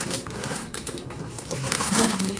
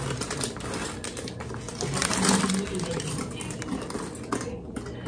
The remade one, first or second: first